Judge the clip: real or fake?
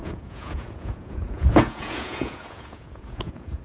fake